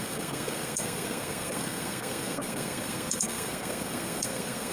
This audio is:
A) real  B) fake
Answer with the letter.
B